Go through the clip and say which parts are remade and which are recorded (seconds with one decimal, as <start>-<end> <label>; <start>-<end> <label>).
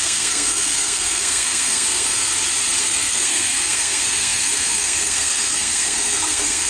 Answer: 0.0-2.3 remade; 2.3-2.8 recorded; 2.8-6.7 remade